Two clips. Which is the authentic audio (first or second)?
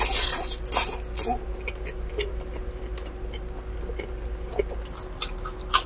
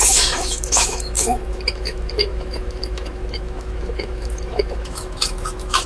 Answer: first